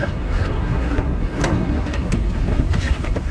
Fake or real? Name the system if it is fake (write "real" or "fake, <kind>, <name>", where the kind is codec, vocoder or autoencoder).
fake, codec, SNAC